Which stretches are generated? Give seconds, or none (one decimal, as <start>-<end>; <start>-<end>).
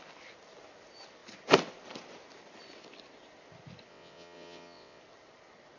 3.9-5.0